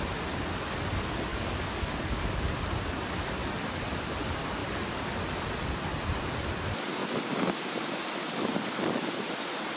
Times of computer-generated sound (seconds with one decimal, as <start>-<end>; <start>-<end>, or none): 1.3-2.5